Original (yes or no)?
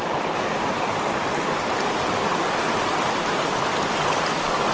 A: yes